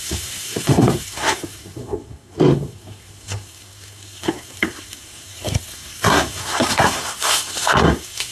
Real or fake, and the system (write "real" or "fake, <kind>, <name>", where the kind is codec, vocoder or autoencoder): fake, codec, SNAC